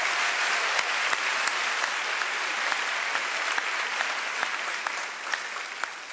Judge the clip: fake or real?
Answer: real